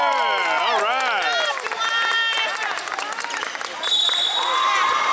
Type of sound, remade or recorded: recorded